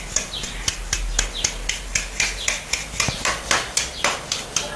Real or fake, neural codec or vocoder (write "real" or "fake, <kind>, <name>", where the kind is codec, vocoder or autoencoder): real